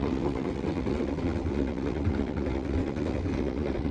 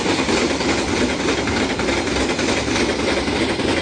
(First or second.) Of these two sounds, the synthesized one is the first